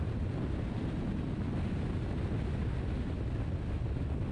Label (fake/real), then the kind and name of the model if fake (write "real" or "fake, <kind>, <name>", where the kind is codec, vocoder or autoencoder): real